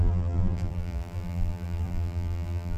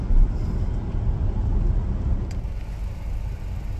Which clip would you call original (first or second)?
second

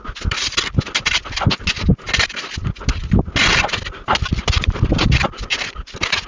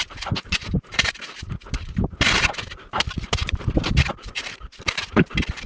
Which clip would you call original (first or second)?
first